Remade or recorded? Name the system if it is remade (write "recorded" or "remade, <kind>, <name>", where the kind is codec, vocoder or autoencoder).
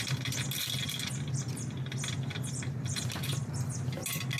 recorded